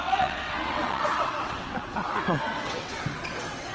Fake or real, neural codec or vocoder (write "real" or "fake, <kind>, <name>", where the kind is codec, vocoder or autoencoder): fake, vocoder, WaveNeXt